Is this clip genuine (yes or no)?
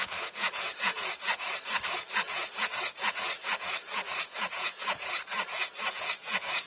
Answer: no